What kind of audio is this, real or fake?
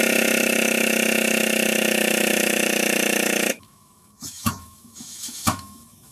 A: fake